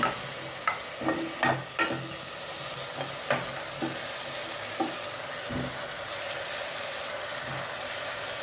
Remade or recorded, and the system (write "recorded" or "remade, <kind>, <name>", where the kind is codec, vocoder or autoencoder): recorded